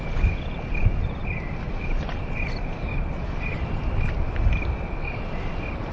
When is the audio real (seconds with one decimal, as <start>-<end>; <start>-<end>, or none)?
0.0-0.8; 4.3-5.9